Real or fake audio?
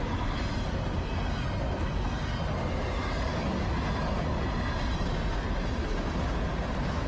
real